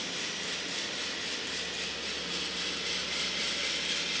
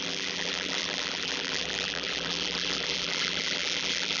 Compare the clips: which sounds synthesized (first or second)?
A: second